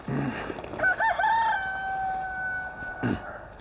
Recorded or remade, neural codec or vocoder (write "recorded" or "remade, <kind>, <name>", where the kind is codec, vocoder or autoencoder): recorded